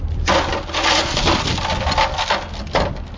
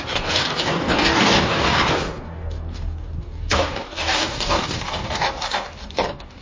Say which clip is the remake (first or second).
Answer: second